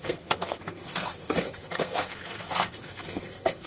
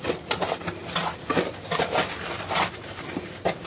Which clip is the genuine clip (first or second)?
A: second